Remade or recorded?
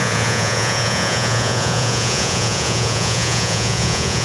remade